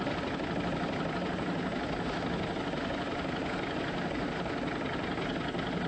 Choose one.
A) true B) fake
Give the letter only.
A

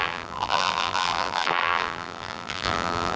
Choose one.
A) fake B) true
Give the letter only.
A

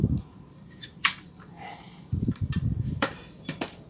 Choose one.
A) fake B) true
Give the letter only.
A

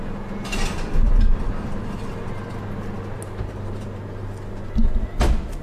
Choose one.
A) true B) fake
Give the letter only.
A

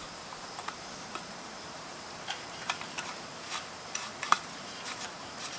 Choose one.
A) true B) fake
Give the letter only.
B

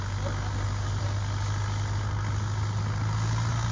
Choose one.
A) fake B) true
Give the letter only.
B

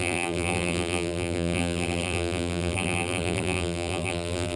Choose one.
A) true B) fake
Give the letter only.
B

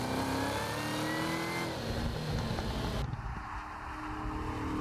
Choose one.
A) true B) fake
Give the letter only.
A